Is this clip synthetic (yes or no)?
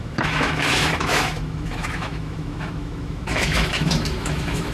yes